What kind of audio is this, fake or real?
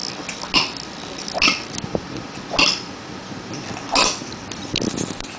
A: real